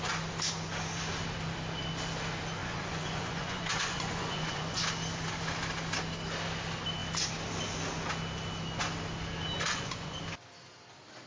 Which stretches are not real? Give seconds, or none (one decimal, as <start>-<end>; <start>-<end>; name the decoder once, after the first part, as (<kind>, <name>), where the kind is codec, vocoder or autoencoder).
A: 2.6-4.8 (vocoder, Vocos); 9.7-10.2